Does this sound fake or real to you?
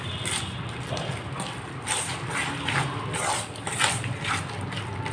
real